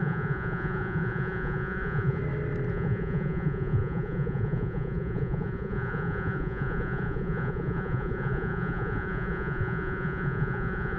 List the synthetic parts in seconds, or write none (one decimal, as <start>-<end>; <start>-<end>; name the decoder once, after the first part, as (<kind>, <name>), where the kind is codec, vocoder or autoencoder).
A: 0.0-2.2 (vocoder, Vocos); 2.7-11.0